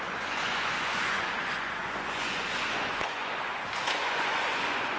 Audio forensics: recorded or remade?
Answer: remade